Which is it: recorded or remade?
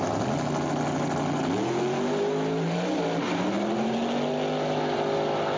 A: recorded